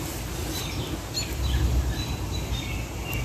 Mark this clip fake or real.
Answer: real